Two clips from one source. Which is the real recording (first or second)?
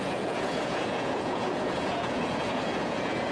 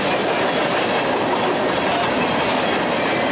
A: second